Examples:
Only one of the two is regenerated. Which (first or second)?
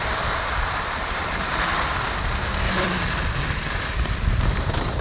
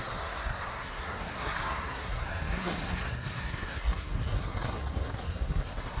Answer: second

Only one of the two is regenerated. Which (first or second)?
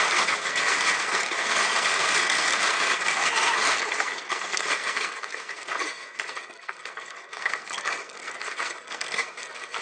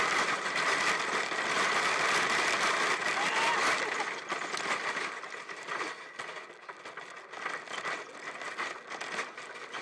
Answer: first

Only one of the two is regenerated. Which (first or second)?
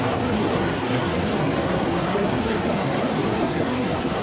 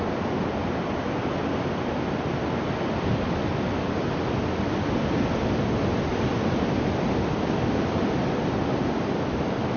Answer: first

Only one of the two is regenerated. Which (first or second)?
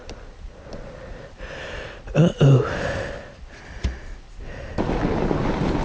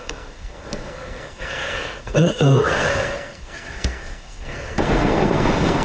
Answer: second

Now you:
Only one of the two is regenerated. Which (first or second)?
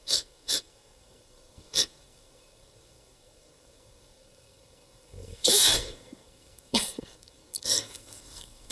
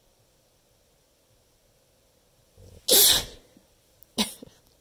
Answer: first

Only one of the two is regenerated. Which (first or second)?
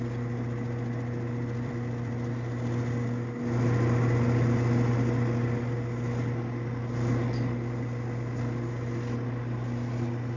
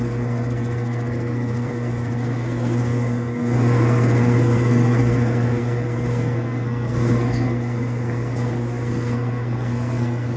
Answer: second